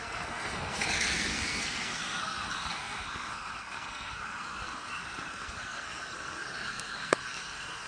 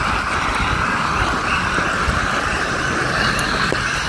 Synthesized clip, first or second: first